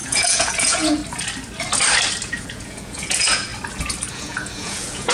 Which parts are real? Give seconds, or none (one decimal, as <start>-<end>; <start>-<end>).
1.0-2.4; 3.5-4.1